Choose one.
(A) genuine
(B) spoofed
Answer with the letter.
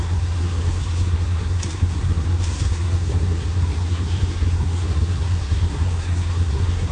B